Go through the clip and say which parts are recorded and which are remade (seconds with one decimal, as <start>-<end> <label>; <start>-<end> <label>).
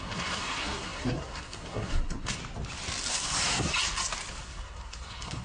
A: 0.0-2.4 remade; 2.4-3.1 recorded; 3.1-3.7 remade; 3.7-4.3 recorded; 4.3-5.4 remade